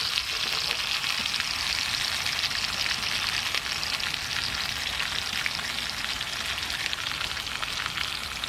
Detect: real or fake real